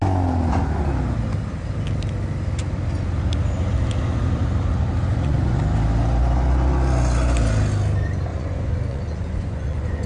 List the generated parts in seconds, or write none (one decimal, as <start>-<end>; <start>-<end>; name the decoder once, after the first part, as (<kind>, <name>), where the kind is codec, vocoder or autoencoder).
5.1-5.6 (vocoder, Vocos); 8.3-10.1